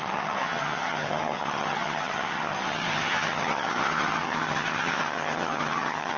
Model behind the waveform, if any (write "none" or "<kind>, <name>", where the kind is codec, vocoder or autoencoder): vocoder, HiFi-GAN